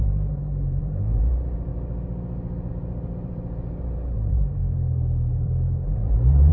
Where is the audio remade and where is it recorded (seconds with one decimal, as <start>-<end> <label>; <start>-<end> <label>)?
0.0-1.7 remade; 1.7-2.7 recorded; 2.7-4.6 remade; 4.6-5.3 recorded; 5.3-6.5 remade

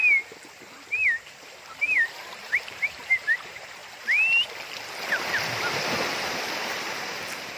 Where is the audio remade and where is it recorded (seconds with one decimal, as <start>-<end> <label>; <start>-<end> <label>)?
0.0-1.8 recorded; 1.8-3.8 remade; 3.8-6.3 recorded; 6.3-7.6 remade

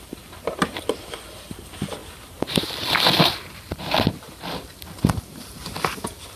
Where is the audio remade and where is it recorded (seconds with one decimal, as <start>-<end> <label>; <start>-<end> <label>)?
0.0-2.0 remade; 2.0-2.6 recorded; 2.6-6.4 remade